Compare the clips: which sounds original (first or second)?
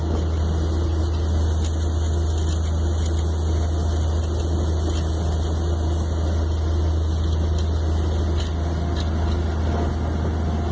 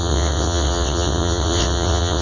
first